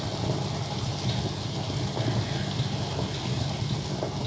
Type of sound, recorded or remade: recorded